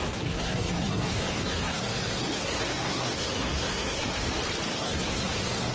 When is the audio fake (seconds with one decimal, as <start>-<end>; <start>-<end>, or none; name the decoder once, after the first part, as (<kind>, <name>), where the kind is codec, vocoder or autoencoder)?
0.0-4.2 (codec, SNAC); 4.7-5.7